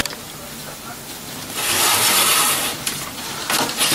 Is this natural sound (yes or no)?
yes